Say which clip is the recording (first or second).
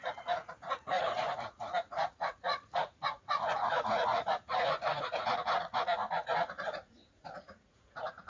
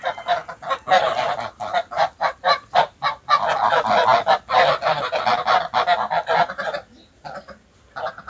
second